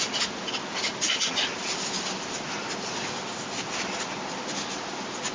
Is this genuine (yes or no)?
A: yes